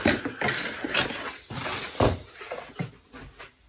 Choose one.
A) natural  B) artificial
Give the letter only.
A